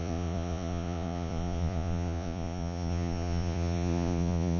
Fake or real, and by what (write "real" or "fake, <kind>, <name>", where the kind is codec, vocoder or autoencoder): fake, vocoder, Vocos